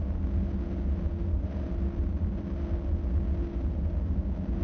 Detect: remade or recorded recorded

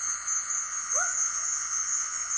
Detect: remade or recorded remade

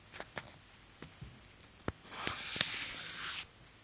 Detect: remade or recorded recorded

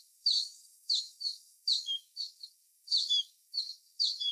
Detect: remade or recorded remade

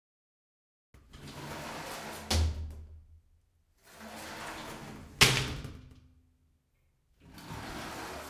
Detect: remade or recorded recorded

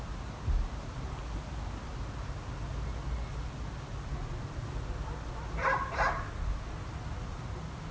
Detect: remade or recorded recorded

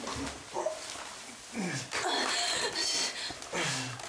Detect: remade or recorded recorded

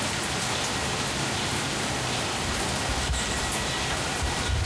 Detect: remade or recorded recorded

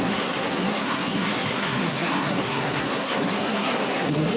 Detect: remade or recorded remade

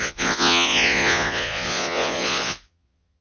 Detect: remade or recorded remade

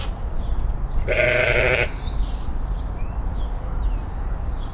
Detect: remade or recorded remade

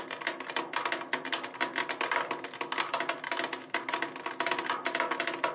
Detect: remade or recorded recorded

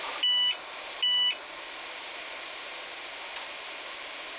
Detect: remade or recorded recorded